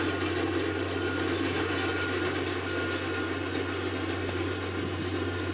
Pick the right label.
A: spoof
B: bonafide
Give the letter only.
B